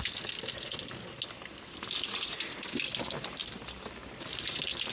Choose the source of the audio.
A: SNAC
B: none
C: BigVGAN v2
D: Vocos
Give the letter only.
B